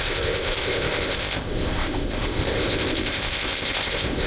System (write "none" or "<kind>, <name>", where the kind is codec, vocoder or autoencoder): codec, ZipCodec